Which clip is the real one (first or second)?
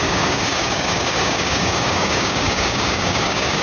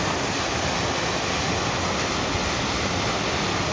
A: second